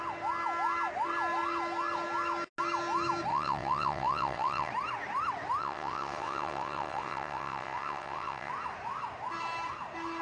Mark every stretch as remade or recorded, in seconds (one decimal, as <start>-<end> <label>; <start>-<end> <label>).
0.0-3.3 recorded; 3.3-4.7 remade; 4.7-5.6 recorded; 5.6-8.5 remade; 8.5-10.2 recorded